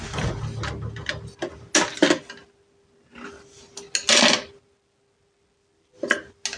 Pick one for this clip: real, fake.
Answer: real